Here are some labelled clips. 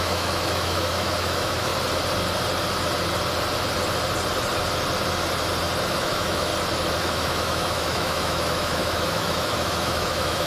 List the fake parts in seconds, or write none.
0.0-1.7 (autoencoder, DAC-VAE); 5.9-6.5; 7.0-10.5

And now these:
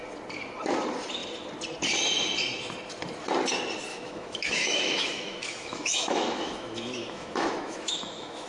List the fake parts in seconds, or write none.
3.9-8.5 (autoencoder, DAC-VAE)